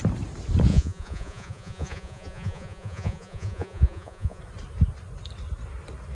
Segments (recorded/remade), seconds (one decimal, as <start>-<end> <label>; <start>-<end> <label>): 0.0-0.7 recorded; 0.7-4.4 remade; 4.4-6.1 recorded